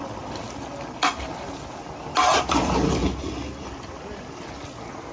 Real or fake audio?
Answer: real